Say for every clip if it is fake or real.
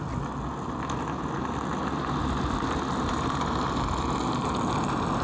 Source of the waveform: real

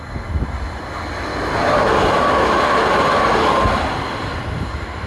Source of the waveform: real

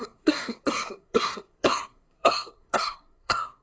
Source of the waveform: fake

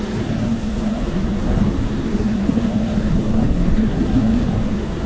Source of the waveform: fake